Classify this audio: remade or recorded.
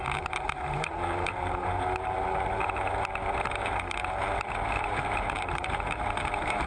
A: remade